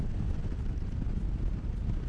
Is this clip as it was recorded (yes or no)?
yes